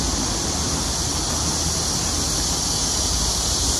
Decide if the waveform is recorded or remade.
recorded